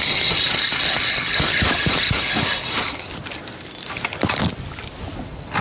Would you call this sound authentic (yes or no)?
yes